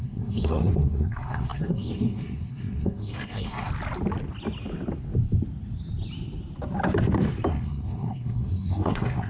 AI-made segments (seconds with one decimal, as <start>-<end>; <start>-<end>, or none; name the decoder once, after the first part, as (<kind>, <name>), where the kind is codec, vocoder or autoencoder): 0.0-3.7 (codec, SNAC); 7.5-9.3